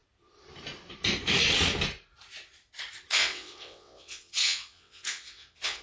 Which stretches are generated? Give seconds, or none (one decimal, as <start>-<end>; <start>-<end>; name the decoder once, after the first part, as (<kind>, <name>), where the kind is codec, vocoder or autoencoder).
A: 3.1-5.8 (vocoder, WaveNeXt)